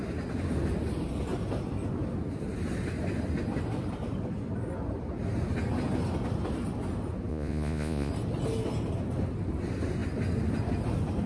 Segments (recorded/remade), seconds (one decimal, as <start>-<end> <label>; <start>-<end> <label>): 0.0-7.3 recorded; 7.3-8.1 remade; 8.1-11.3 recorded